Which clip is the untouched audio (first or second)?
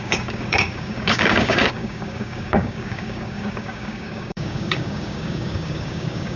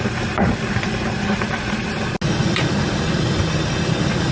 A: second